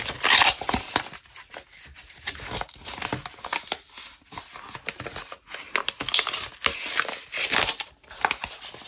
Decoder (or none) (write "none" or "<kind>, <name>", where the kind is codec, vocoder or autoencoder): none